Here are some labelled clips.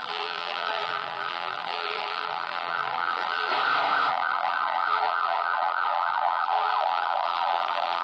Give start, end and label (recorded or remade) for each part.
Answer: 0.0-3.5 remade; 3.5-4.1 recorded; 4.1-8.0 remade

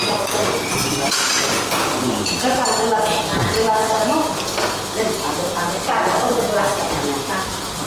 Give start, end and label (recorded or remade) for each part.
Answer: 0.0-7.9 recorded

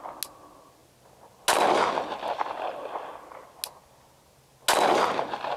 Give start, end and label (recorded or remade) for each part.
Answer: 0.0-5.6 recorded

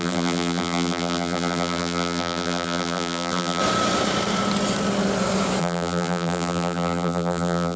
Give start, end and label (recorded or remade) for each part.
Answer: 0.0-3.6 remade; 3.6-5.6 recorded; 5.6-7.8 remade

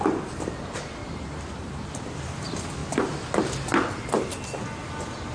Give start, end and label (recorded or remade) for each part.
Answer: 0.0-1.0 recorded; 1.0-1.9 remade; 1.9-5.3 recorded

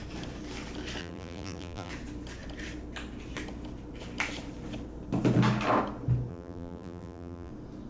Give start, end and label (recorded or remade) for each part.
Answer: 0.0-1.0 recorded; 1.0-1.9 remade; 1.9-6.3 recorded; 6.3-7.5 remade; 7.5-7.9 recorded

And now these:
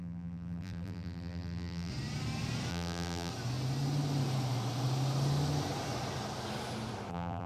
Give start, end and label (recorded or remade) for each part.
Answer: 0.0-1.9 remade; 1.9-2.7 recorded; 2.7-3.3 remade; 3.3-7.1 recorded; 7.1-7.5 remade